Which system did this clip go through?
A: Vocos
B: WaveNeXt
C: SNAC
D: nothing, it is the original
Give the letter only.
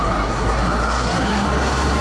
C